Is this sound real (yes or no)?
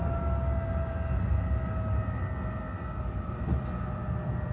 yes